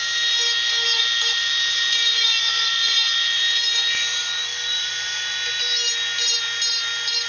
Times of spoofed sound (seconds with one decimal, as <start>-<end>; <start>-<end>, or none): 1.2-3.4; 4.2-4.9